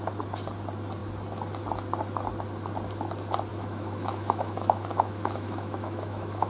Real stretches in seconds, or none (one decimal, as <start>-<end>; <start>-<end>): 0.0-3.5